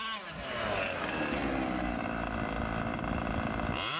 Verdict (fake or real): real